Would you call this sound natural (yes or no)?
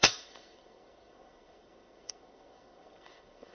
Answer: no